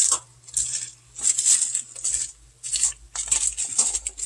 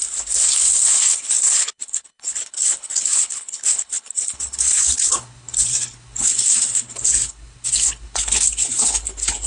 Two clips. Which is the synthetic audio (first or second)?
second